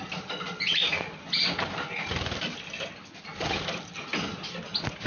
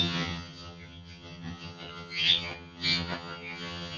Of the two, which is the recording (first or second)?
first